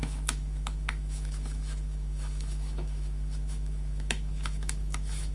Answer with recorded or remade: remade